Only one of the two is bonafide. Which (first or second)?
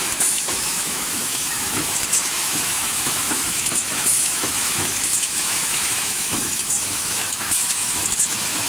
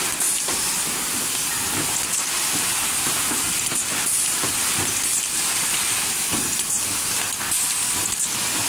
second